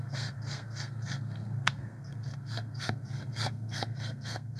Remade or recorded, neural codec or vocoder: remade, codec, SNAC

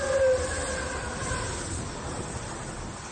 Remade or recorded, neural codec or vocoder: recorded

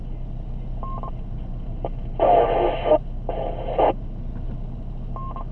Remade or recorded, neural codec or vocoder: recorded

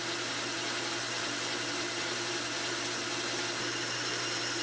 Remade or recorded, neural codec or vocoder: recorded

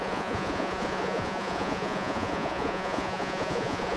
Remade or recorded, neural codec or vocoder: remade, vocoder, Vocos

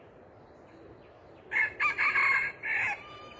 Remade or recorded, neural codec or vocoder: recorded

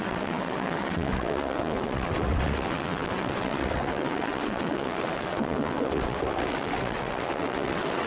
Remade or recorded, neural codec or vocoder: remade, vocoder, WaveNeXt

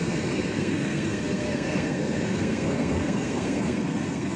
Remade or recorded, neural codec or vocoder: remade, codec, SNAC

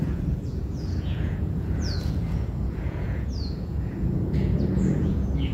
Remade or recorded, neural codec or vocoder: remade, vocoder, Vocos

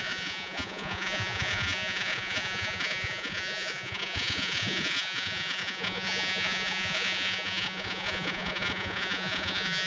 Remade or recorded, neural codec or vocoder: remade, vocoder, Vocos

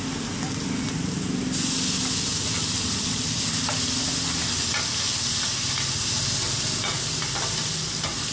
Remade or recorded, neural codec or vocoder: recorded